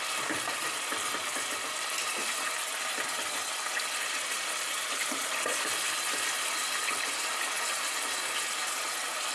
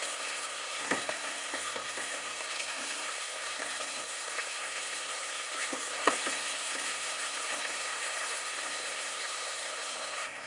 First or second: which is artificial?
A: second